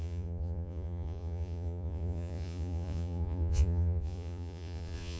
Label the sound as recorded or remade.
remade